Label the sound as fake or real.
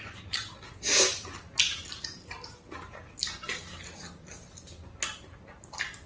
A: real